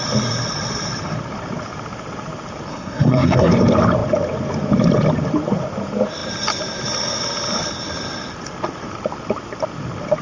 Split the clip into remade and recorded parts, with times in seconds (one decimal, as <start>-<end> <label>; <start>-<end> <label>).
0.0-2.7 recorded; 2.7-3.5 remade; 3.5-10.2 recorded